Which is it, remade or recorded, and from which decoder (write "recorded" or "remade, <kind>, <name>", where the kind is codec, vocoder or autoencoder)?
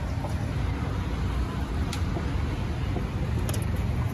recorded